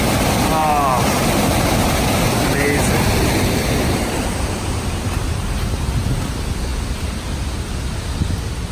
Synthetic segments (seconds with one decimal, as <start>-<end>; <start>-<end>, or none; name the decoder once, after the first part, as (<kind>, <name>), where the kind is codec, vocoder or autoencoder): 0.6-5.7 (vocoder, BigVGAN v2)